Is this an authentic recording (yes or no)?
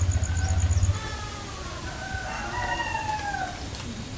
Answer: yes